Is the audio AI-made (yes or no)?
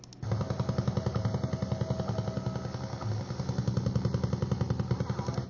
no